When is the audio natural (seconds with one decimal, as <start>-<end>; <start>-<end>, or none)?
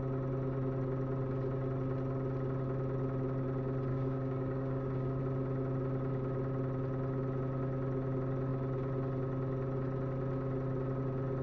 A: 0.0-3.9; 5.2-11.4